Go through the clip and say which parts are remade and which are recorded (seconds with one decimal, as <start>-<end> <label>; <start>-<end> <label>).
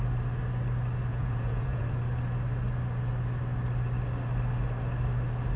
0.0-1.1 recorded; 1.1-2.0 remade; 2.0-5.6 recorded